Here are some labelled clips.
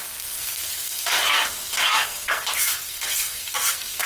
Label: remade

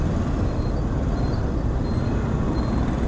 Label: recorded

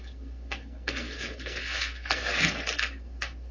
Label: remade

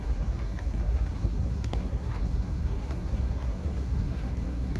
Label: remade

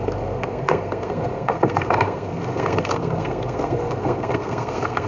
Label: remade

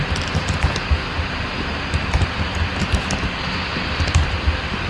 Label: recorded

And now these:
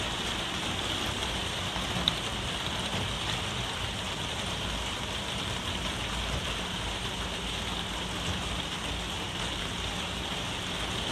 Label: recorded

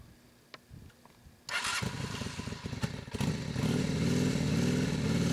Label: recorded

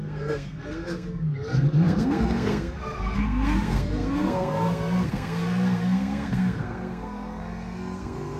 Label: remade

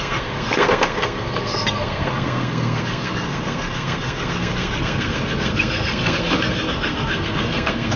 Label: remade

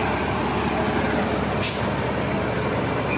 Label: recorded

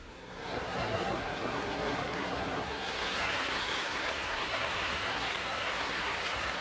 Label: remade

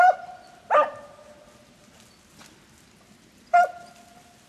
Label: recorded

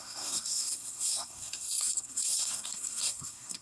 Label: remade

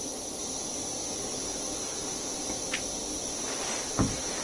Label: recorded